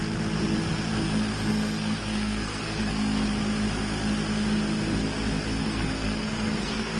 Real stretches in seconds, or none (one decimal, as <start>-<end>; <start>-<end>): 0.0-1.5; 3.2-5.6